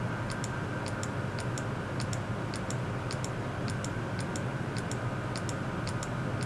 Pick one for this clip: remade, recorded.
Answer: recorded